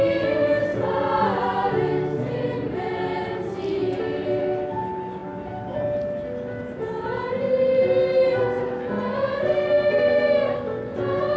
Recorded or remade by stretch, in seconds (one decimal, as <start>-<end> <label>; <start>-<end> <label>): 0.0-0.7 recorded; 0.7-1.2 remade; 1.2-11.4 recorded